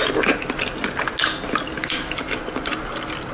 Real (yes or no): yes